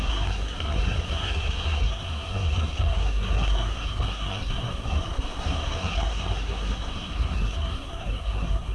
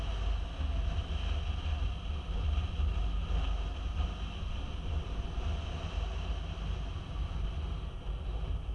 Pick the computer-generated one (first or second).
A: first